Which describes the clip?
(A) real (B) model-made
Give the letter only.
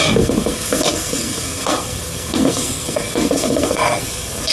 B